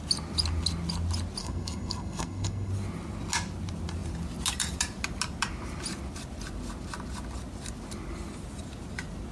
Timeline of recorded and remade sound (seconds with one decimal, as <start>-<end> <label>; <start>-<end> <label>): 0.0-1.4 recorded; 1.4-2.7 remade; 2.7-9.3 recorded